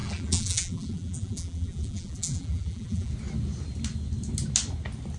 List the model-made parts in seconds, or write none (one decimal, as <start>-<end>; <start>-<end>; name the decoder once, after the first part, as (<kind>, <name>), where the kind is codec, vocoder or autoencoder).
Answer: 0.0-3.1 (vocoder, BigVGAN v2)